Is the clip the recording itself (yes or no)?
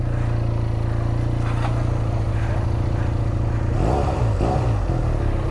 yes